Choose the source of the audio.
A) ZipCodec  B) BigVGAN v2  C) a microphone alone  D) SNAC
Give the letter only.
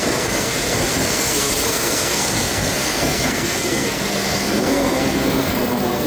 D